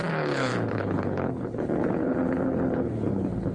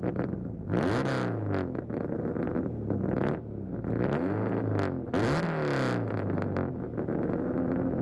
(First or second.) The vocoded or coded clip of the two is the first